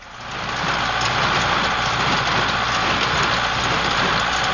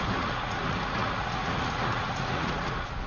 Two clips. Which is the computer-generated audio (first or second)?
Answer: second